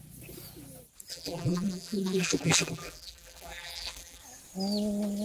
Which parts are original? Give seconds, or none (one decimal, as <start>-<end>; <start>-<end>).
0.0-1.1; 4.2-5.2